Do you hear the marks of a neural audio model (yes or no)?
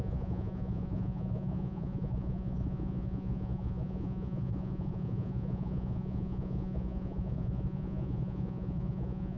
yes